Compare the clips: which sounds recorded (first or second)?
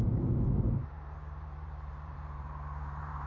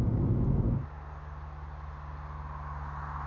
second